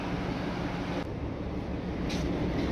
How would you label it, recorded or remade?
recorded